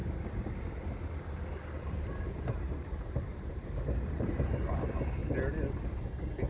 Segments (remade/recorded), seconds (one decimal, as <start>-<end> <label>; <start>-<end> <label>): 0.0-1.7 recorded; 1.7-5.2 remade; 5.2-6.5 recorded